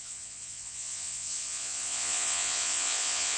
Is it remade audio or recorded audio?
remade